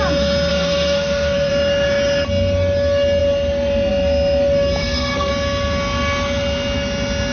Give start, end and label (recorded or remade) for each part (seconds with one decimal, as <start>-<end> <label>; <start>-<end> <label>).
0.0-0.5 recorded; 0.5-1.5 remade; 1.5-4.8 recorded; 4.8-5.3 remade; 5.3-7.3 recorded